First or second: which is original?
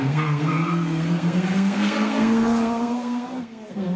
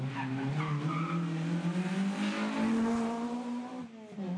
second